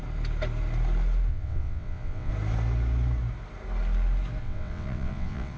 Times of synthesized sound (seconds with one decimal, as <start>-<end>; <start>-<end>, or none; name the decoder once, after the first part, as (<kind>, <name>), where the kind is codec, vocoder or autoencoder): 1.3-2.3 (vocoder, WaveNeXt); 4.4-5.6